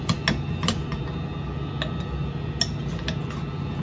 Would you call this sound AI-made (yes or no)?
no